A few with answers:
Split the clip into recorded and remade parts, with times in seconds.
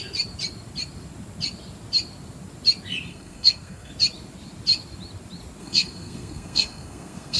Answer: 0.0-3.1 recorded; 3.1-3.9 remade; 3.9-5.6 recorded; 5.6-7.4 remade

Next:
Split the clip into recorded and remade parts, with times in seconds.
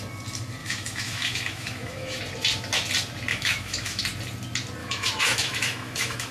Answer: 0.0-0.6 recorded; 0.6-2.2 remade; 2.2-3.3 recorded; 3.3-4.0 remade; 4.0-4.8 recorded; 4.8-6.3 remade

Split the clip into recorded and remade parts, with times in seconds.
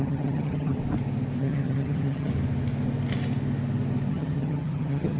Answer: 0.0-0.8 remade; 0.8-1.4 recorded; 1.4-2.3 remade; 2.3-4.1 recorded; 4.1-5.2 remade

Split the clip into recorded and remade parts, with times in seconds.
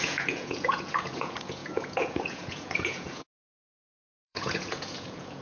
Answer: 0.0-5.4 remade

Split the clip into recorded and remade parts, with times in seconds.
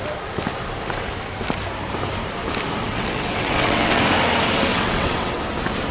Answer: 0.0-2.8 recorded; 2.8-4.0 remade; 4.0-4.7 recorded; 4.7-5.4 remade; 5.4-5.9 recorded